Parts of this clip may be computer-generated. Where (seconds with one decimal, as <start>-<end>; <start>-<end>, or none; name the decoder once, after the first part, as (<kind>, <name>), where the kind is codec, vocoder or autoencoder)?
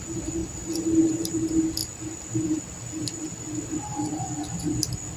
0.4-1.3 (vocoder, BigVGAN v2)